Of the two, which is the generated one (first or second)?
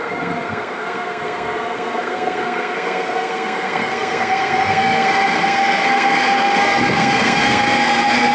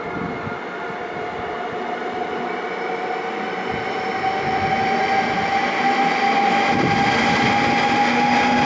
first